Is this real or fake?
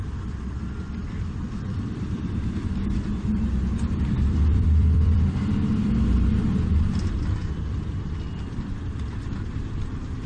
fake